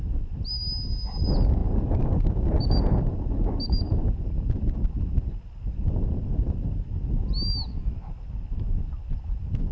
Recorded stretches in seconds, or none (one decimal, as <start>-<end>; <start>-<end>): 0.0-9.7